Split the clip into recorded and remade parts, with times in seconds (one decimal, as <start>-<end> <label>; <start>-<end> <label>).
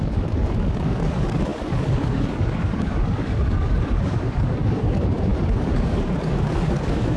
0.0-7.2 remade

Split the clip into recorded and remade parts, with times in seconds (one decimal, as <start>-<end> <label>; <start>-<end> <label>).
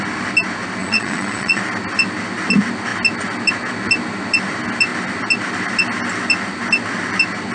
0.0-0.8 recorded; 0.8-1.6 remade; 1.6-7.5 recorded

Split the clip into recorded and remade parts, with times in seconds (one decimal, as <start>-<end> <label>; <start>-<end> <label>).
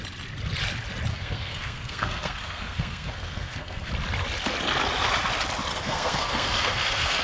0.0-1.1 recorded; 1.1-3.9 remade; 3.9-5.7 recorded; 5.7-7.2 remade